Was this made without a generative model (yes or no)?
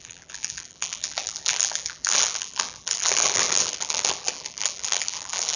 no